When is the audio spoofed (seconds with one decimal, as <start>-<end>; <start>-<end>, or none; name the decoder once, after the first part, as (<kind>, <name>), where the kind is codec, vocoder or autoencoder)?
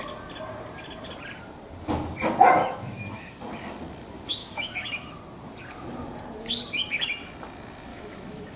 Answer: 2.6-3.4 (autoencoder, DAC-VAE); 4.4-5.2; 7.9-8.6